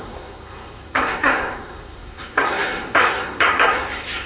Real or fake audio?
fake